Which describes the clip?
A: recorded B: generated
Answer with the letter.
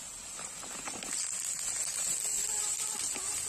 A